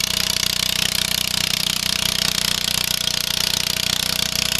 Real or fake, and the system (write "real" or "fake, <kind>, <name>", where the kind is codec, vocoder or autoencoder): fake, vocoder, BigVGAN v2